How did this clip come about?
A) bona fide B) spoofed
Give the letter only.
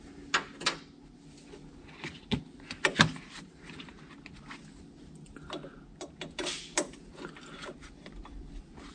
A